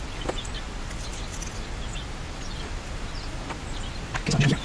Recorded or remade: recorded